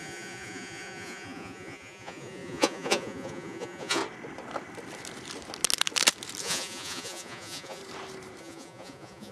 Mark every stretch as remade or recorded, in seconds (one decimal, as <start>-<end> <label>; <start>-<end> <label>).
0.0-4.0 remade; 4.0-6.4 recorded; 6.4-7.8 remade; 7.8-8.4 recorded; 8.4-9.3 remade